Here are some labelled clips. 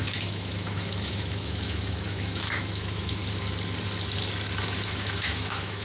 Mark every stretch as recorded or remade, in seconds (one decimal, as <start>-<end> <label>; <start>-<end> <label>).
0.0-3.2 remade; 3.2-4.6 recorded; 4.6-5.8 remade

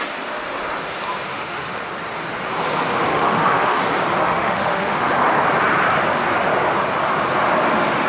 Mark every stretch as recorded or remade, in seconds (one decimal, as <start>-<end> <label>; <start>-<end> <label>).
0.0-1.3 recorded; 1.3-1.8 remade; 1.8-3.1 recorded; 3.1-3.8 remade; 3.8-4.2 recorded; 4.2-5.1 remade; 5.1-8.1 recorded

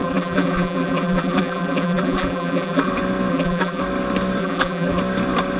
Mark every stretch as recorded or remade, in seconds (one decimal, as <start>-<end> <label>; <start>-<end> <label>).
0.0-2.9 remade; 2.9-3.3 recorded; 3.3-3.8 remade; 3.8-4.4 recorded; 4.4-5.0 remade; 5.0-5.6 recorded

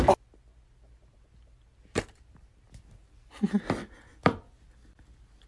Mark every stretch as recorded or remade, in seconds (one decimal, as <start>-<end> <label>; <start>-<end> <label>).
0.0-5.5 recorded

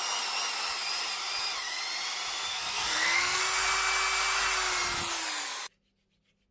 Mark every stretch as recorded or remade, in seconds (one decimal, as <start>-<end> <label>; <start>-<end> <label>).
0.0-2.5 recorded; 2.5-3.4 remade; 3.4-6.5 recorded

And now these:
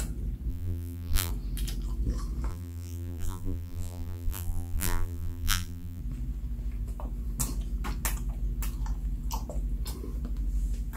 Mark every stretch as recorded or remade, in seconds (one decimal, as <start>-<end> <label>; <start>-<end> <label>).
0.0-0.5 recorded; 0.5-1.3 remade; 1.3-2.5 recorded; 2.5-6.0 remade; 6.0-11.0 recorded

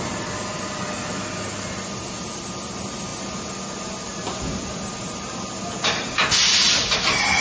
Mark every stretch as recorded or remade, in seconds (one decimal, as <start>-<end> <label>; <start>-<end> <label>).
0.0-7.4 recorded